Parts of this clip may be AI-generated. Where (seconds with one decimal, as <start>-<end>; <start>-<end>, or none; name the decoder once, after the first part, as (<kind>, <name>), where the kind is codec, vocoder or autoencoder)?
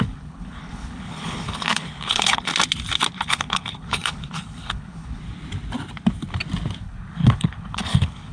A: 0.0-2.5 (codec, HILCodec); 3.1-5.2; 6.8-8.3